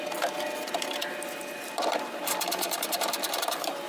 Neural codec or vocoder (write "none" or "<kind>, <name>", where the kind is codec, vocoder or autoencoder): vocoder, BigVGAN v2